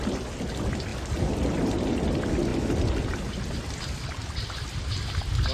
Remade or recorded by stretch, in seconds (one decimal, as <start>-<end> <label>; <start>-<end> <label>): 0.0-5.5 recorded